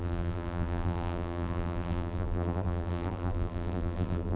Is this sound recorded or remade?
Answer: remade